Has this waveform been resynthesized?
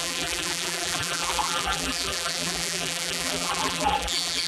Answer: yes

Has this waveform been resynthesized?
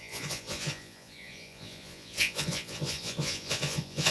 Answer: yes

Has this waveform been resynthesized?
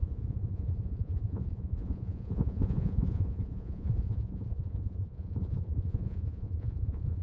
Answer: yes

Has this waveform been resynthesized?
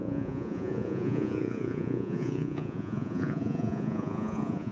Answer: yes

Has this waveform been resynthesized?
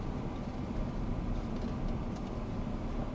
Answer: no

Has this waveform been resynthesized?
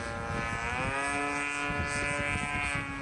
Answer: no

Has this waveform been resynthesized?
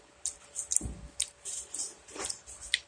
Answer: yes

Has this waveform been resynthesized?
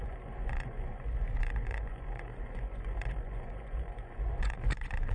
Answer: yes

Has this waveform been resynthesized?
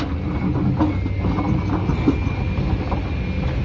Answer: no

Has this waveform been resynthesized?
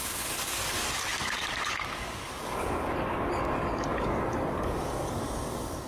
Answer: yes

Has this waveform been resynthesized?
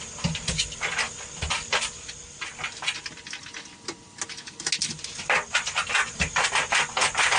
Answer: no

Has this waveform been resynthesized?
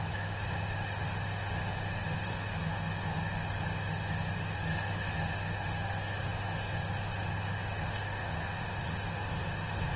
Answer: yes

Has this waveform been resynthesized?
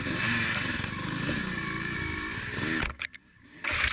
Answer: yes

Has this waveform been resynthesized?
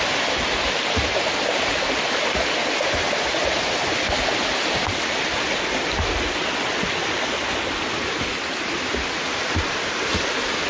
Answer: no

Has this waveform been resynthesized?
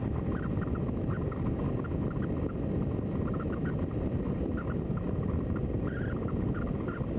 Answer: no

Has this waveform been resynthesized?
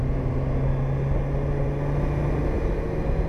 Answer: no